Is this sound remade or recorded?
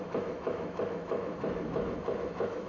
remade